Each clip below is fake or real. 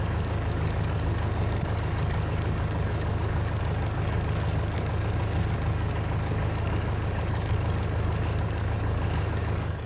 fake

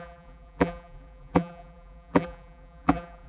fake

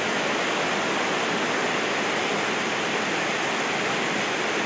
real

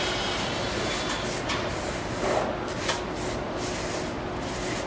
real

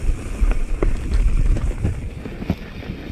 real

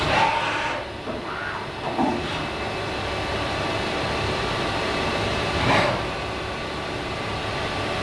real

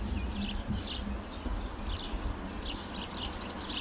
real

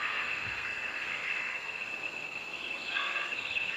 fake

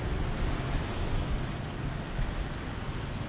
real